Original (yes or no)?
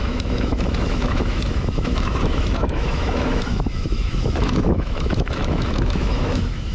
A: no